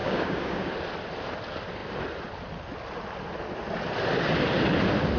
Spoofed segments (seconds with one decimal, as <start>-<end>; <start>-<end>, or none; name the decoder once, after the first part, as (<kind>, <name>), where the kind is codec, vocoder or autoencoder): 0.0-0.7 (codec, DAC)